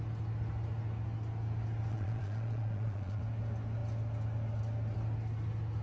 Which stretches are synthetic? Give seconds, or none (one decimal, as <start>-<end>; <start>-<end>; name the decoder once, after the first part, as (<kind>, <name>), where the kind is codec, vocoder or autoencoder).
1.9-3.2 (vocoder, Vocos)